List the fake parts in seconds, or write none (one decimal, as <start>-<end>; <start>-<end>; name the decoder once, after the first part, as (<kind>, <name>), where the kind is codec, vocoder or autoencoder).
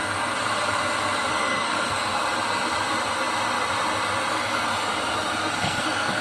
1.3-2.1 (codec, SNAC); 4.3-4.7; 5.4-6.2